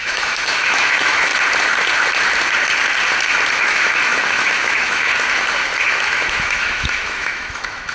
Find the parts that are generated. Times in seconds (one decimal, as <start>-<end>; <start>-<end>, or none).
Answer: 0.0-1.3; 3.6-5.1; 5.9-7.9